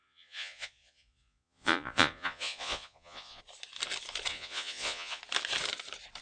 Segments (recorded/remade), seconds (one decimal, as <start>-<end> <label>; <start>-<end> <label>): 0.0-3.4 remade; 3.4-4.3 recorded; 4.3-5.2 remade; 5.2-6.2 recorded